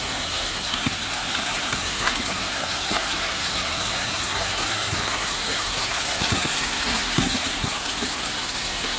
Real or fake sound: fake